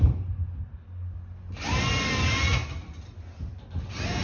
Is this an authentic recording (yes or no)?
yes